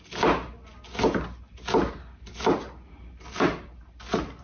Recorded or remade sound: recorded